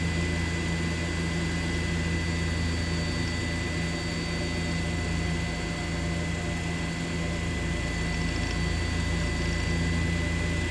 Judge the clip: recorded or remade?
recorded